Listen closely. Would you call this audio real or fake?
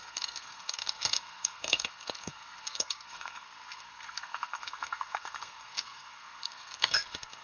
fake